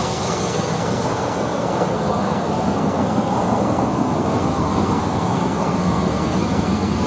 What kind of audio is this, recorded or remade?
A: remade